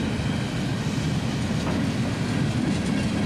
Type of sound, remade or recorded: recorded